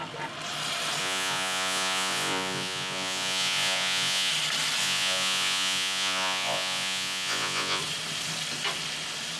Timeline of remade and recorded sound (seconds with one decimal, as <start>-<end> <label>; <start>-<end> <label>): 0.0-1.0 recorded; 1.0-4.3 remade; 4.3-4.8 recorded; 4.8-7.8 remade; 7.8-9.4 recorded